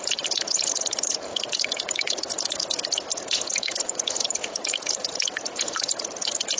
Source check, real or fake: fake